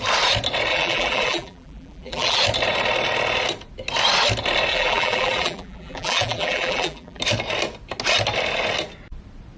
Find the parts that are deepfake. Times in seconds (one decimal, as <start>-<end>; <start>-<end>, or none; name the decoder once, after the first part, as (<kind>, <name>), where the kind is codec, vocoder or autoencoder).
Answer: 0.7-2.4 (vocoder, BigVGAN v2); 4.7-7.2